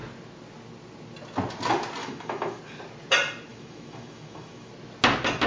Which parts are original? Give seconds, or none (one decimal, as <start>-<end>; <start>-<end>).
0.0-2.0; 2.6-3.5; 4.7-5.5